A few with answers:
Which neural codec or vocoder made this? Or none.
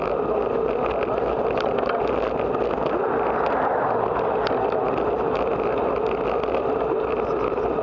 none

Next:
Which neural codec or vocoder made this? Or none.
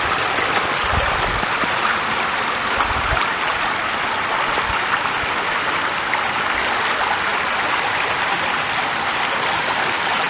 none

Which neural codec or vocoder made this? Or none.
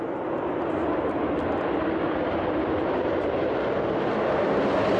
none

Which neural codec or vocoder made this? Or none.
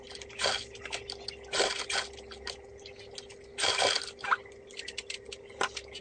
none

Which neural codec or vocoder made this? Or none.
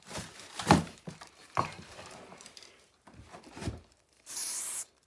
vocoder, BigVGAN v2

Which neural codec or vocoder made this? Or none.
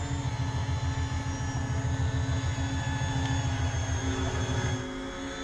none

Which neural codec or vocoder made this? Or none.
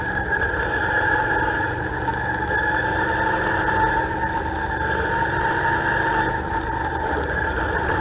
none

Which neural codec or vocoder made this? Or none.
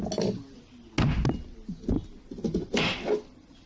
none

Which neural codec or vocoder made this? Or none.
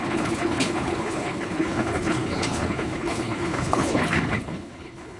codec, HILCodec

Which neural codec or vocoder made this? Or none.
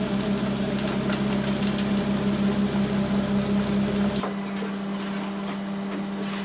none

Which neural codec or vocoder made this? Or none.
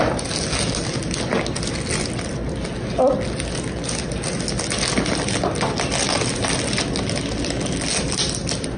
none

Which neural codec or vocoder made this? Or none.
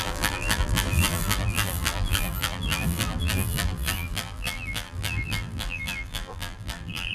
vocoder, BigVGAN v2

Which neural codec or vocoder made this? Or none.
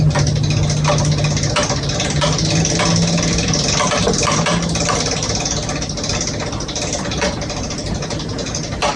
none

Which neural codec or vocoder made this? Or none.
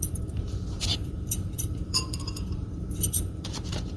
vocoder, BigVGAN v2